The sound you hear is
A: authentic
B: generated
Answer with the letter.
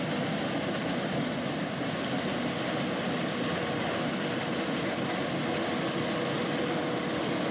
A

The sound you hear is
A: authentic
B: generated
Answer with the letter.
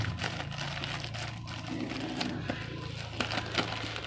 A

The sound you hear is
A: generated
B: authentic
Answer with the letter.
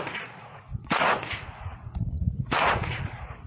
A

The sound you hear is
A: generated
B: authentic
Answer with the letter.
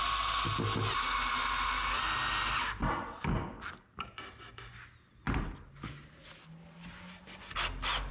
B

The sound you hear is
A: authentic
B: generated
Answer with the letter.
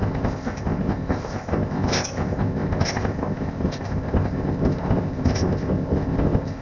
B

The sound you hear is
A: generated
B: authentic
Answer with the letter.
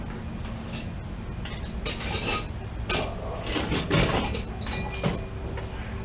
B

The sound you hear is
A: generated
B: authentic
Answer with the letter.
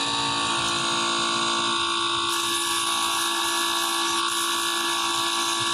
B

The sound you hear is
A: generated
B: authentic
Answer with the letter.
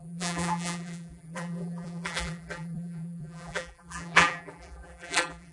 A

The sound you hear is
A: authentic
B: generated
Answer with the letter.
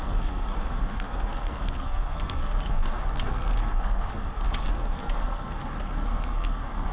B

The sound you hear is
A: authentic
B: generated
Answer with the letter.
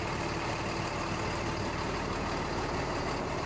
A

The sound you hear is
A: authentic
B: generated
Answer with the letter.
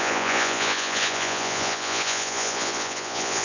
B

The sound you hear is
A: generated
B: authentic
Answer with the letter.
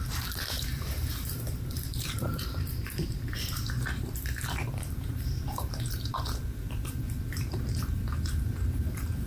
A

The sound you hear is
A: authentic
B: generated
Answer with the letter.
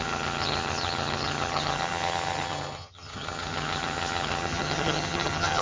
B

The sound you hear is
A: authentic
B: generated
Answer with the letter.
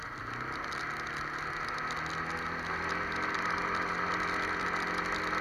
A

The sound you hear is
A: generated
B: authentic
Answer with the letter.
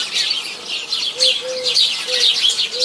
B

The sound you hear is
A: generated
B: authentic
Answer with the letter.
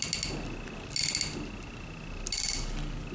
B